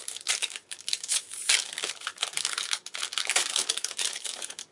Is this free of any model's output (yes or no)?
no